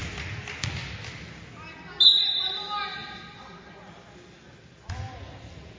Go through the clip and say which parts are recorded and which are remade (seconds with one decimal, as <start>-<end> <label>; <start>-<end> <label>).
0.0-5.8 recorded